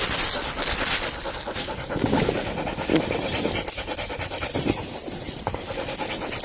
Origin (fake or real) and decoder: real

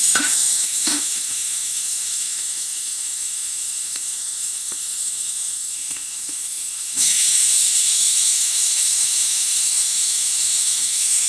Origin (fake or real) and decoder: fake, autoencoder, DAC-VAE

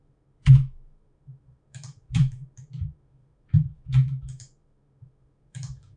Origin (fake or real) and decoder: fake, autoencoder, DAC-VAE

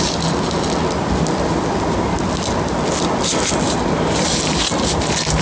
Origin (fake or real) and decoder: real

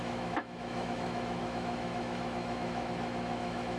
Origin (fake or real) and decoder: fake, autoencoder, DAC-VAE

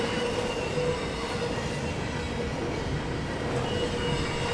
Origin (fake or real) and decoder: real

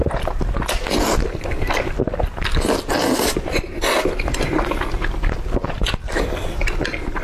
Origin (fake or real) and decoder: real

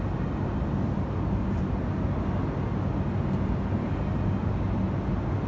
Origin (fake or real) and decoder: real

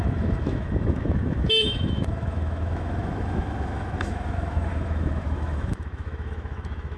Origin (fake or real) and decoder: fake, autoencoder, DAC-VAE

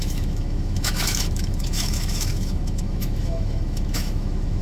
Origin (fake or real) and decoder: fake, autoencoder, DAC-VAE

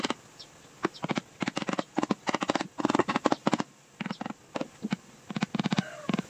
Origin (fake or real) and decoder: real